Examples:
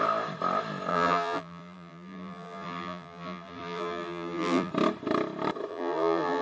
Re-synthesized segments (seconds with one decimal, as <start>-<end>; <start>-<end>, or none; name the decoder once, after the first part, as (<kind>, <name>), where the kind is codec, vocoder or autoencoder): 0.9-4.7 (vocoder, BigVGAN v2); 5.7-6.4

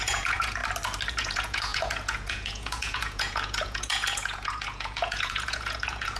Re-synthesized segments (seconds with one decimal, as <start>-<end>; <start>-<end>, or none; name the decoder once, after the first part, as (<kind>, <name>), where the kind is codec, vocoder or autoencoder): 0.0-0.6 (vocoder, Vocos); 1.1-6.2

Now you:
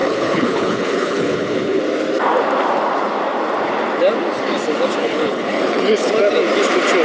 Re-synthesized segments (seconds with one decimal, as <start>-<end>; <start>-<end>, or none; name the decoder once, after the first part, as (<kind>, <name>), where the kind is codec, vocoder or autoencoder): 0.0-1.8 (codec, HILCodec); 5.0-6.1

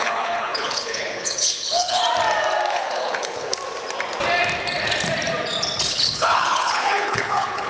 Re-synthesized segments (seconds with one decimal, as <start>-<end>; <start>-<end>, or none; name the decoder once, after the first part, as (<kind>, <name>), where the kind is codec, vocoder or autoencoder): 0.0-2.0 (codec, HILCodec); 2.7-3.5; 5.9-7.7

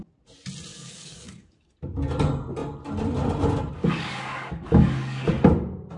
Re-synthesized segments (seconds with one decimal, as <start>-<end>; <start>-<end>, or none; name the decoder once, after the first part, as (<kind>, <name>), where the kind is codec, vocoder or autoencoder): 0.7-1.7 (codec, DAC); 3.8-5.3

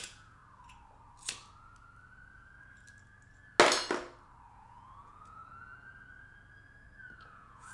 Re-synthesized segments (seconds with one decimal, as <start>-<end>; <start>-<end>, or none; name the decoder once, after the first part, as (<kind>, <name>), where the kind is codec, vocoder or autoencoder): 0.0-0.4 (vocoder, Vocos); 4.5-5.4; 7.2-7.7

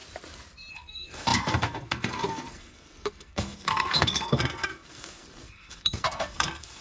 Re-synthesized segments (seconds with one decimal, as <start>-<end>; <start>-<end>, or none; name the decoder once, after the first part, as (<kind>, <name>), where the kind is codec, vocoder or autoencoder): 0.7-6.8 (codec, SNAC)

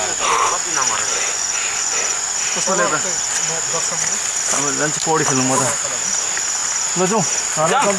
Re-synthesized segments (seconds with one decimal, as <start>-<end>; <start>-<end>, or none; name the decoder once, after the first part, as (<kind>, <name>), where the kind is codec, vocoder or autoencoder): 1.1-2.3 (vocoder, Vocos)